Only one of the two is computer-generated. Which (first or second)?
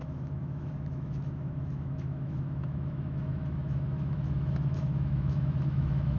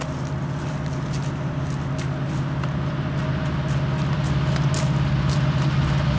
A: first